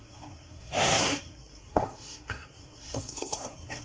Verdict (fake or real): fake